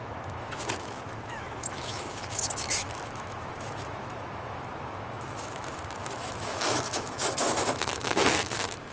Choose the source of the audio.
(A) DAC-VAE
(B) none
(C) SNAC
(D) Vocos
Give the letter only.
A